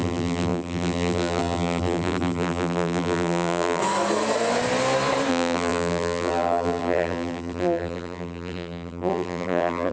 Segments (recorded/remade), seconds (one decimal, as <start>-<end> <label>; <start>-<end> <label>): 0.0-3.8 remade; 3.8-5.3 recorded; 5.3-9.9 remade